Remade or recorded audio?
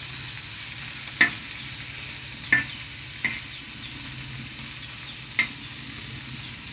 recorded